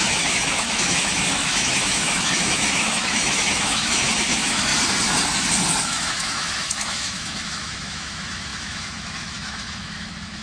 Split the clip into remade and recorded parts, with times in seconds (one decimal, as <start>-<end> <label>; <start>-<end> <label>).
0.0-4.7 remade; 4.7-5.8 recorded; 5.8-10.4 remade